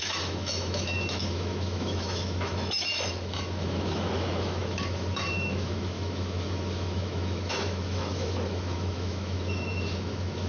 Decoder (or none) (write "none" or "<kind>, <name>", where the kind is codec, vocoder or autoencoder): autoencoder, DAC-VAE